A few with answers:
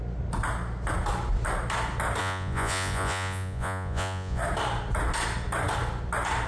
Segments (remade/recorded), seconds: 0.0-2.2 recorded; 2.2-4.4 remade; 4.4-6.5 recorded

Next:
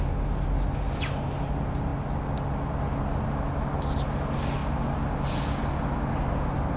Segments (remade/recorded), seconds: 0.0-6.8 recorded

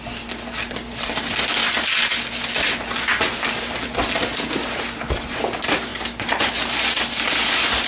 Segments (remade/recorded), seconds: 0.0-7.9 recorded